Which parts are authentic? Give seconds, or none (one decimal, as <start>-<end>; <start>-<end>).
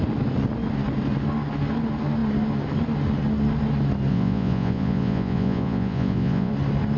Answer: 0.0-4.1; 6.5-7.0